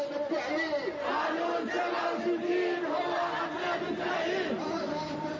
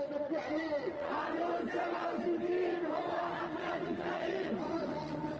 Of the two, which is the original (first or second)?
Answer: first